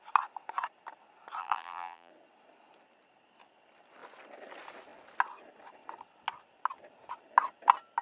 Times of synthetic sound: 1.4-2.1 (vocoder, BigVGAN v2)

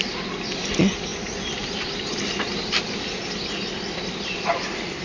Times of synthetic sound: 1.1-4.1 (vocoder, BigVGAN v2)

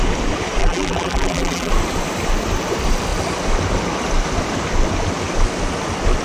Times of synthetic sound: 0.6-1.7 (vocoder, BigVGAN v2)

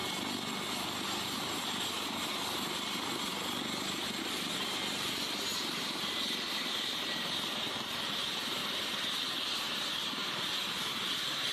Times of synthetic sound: 0.7-3.3 (vocoder, BigVGAN v2); 4.2-11.5

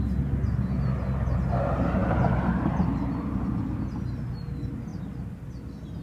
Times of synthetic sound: 2.0-4.4 (vocoder, BigVGAN v2)